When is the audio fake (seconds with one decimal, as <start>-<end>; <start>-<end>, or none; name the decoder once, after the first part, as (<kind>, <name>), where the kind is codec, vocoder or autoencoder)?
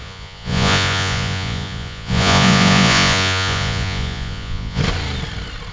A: 0.0-4.8 (vocoder, Vocos)